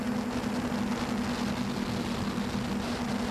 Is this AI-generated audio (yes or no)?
no